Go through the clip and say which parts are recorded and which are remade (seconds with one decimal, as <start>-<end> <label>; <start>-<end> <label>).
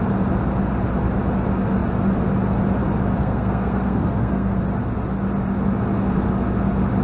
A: 0.0-3.2 recorded; 3.2-4.6 remade; 4.6-7.0 recorded